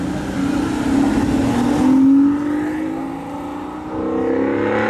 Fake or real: real